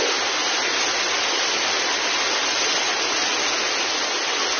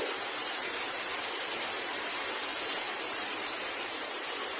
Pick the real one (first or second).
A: first